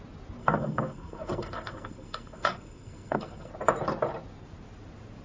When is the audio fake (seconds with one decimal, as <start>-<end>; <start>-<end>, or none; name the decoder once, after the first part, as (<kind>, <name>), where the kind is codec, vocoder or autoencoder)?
0.4-3.5 (codec, SNAC)